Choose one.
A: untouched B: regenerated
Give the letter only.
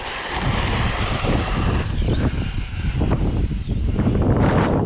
B